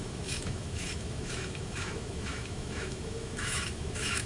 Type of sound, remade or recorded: remade